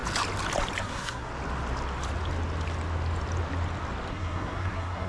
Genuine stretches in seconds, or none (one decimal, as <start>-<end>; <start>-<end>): 0.0-0.8; 1.3-4.1